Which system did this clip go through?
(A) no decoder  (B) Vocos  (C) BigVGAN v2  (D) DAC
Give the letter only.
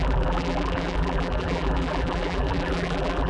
C